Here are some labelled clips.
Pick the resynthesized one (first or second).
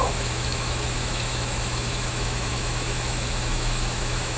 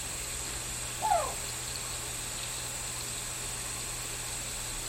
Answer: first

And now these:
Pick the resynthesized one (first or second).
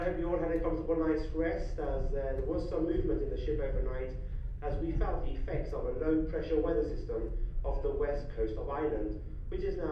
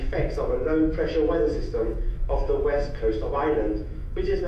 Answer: second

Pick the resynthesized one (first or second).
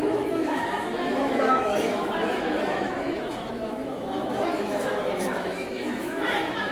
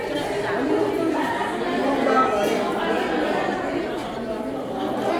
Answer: first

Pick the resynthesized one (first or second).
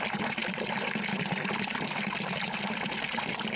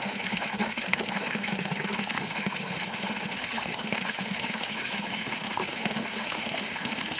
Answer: second